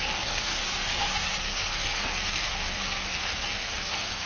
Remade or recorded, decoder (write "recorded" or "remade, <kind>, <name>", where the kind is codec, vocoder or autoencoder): remade, codec, SNAC